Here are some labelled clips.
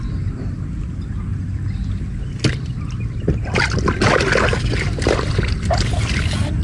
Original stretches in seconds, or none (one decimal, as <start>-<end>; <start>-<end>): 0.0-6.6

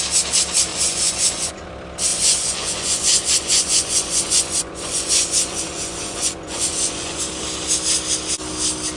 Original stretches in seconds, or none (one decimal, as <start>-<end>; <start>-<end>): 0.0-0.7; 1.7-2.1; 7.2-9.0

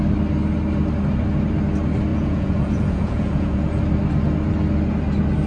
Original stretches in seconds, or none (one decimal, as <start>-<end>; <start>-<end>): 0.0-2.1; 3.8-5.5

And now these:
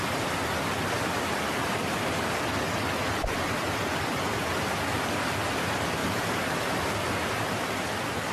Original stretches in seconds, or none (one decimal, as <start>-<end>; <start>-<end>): 0.0-8.3